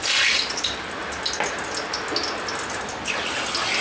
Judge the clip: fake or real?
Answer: real